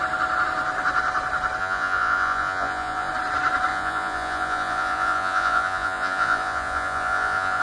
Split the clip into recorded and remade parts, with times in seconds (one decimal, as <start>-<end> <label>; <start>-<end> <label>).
0.0-1.6 recorded; 1.6-3.1 remade; 3.1-3.7 recorded; 3.7-7.6 remade